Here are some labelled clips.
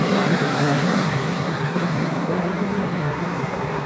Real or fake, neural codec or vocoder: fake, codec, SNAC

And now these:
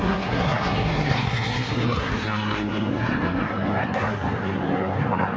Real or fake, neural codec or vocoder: fake, codec, SNAC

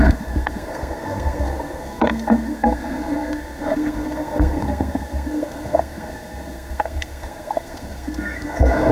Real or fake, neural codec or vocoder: fake, codec, SNAC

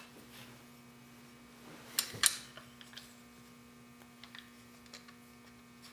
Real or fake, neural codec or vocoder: real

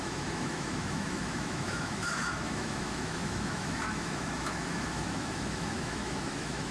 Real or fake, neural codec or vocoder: fake, autoencoder, DAC-VAE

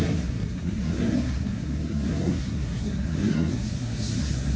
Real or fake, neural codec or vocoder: fake, codec, SNAC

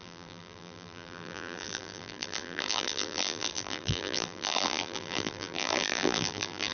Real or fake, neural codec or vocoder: fake, vocoder, BigVGAN v2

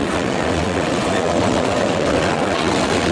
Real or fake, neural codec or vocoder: fake, vocoder, WaveNeXt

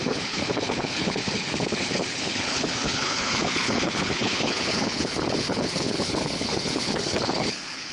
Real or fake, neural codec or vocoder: fake, codec, HILCodec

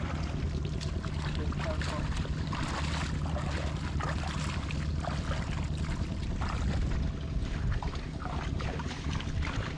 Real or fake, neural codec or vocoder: real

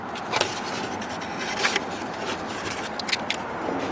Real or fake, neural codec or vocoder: real